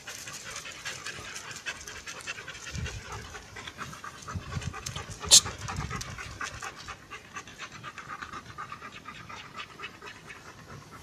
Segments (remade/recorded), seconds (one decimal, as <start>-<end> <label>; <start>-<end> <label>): 0.0-2.7 remade; 2.7-4.2 recorded; 4.2-5.0 remade; 5.0-7.5 recorded; 7.5-10.3 remade; 10.3-11.0 recorded